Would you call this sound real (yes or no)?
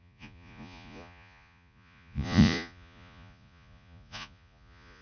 no